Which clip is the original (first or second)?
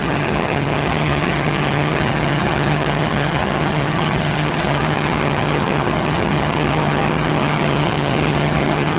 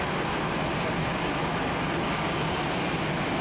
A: second